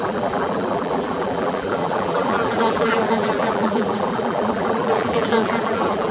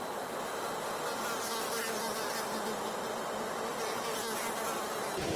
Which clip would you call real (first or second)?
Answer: second